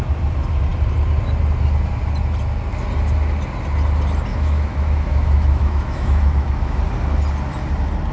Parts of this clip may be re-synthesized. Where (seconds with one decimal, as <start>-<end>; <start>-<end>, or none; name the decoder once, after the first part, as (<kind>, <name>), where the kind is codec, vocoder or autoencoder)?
4.3-6.8 (autoencoder, DAC-VAE)